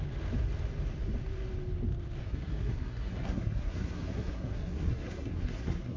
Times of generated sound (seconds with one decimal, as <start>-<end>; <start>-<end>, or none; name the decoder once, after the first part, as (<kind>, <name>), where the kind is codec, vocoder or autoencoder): 2.2-6.0 (codec, SNAC)